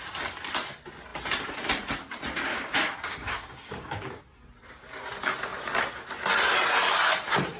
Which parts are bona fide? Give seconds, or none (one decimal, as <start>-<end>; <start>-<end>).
0.0-2.5; 4.2-7.6